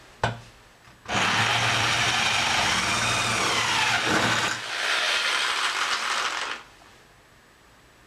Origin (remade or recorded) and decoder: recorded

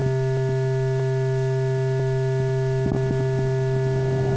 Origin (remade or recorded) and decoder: recorded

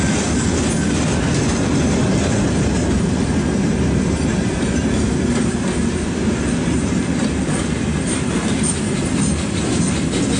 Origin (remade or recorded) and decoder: recorded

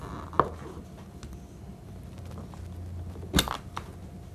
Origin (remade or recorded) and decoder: recorded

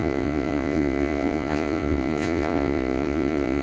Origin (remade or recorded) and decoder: remade, vocoder, Vocos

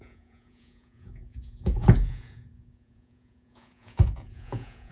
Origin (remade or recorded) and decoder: remade, vocoder, Vocos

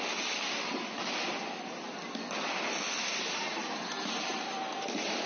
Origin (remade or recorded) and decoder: recorded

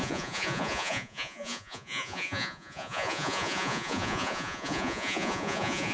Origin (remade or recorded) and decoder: remade, vocoder, Vocos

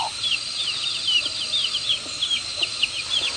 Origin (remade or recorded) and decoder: recorded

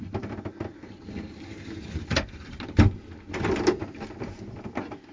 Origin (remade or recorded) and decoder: recorded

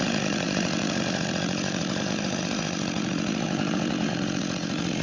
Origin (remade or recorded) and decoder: remade, vocoder, Vocos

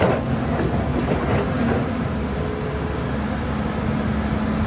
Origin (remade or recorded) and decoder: recorded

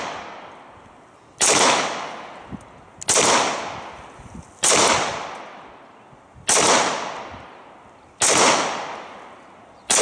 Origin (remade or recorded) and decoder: recorded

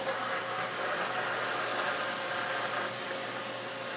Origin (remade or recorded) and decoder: recorded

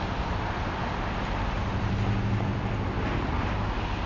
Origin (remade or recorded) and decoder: recorded